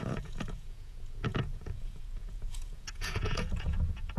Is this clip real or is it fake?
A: fake